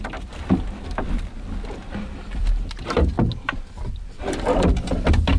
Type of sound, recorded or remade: recorded